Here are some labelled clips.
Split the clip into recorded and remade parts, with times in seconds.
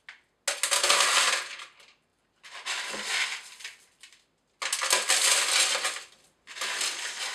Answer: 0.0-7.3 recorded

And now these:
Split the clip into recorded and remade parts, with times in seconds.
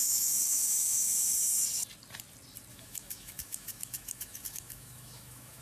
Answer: 0.0-1.6 remade; 1.6-2.7 recorded; 2.7-5.6 remade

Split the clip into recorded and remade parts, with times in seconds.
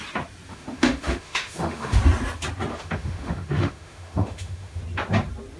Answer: 0.0-0.5 recorded; 0.5-2.0 remade; 2.0-2.7 recorded; 2.7-4.8 remade; 4.8-5.6 recorded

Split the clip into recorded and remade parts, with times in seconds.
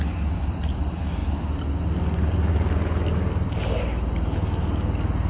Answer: 0.0-5.3 recorded